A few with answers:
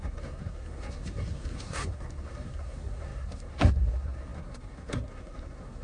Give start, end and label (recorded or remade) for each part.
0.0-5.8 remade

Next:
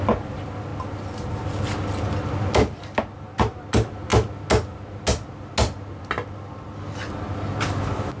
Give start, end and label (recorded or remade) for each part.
0.0-8.2 recorded

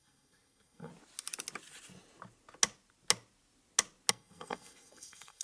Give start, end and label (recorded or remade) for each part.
0.0-0.9 remade; 0.9-4.1 recorded; 4.1-5.4 remade

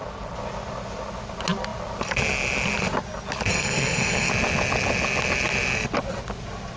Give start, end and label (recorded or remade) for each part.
0.0-3.5 recorded; 3.5-4.3 remade; 4.3-6.8 recorded

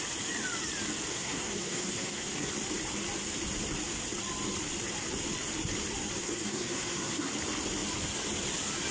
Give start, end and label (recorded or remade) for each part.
0.0-1.1 recorded; 1.1-2.5 remade; 2.5-6.2 recorded; 6.2-7.3 remade; 7.3-8.9 recorded